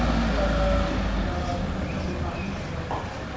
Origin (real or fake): real